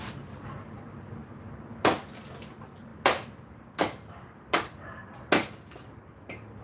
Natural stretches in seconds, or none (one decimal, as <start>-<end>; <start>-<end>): 0.0-6.6